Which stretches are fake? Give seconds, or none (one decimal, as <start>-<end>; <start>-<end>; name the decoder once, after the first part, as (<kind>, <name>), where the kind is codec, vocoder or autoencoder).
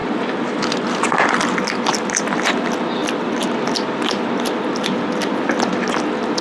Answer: none